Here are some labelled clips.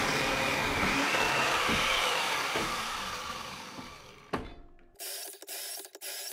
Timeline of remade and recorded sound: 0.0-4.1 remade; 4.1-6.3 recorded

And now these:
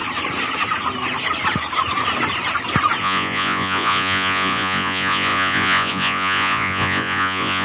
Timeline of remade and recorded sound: 0.0-3.0 recorded; 3.0-7.6 remade